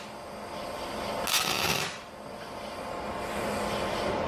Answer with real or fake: real